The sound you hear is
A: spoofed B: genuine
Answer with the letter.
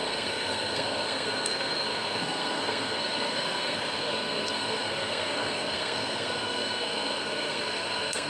A